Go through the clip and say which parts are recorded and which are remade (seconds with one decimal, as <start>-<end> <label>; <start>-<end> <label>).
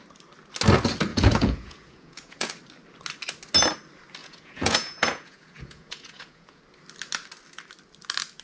0.0-1.1 recorded; 1.1-2.5 remade; 2.5-4.2 recorded; 4.2-6.6 remade; 6.6-8.4 recorded